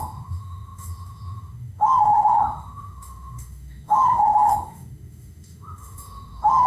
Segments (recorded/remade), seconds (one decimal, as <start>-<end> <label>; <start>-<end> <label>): 0.0-6.7 remade